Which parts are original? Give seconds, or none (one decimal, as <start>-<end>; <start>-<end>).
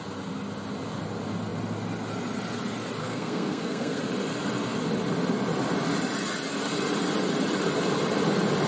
0.0-3.0; 4.0-8.7